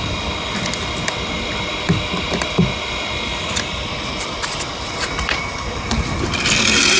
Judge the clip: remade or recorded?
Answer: remade